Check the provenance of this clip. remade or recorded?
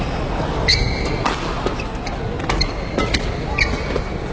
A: recorded